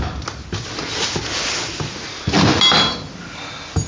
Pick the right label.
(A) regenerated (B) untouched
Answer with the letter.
B